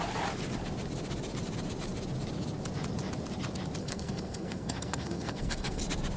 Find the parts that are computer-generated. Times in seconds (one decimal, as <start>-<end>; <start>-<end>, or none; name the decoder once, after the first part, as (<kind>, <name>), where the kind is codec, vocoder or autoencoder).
3.8-5.8 (codec, SNAC)